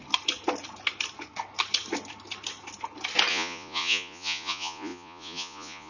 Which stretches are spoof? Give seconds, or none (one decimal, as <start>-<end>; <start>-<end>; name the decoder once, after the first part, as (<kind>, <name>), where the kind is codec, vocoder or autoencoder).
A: 3.3-5.9 (vocoder, Vocos)